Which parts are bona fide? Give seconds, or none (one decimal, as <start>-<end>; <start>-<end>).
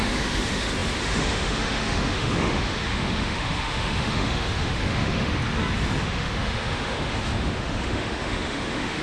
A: 5.3-6.0